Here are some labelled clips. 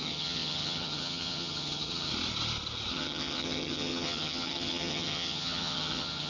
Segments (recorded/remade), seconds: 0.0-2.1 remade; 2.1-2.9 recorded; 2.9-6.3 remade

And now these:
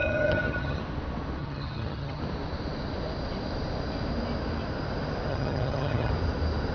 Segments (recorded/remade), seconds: 0.0-0.8 remade; 0.8-1.4 recorded; 1.4-2.2 remade; 2.2-5.3 recorded; 5.3-6.1 remade; 6.1-6.7 recorded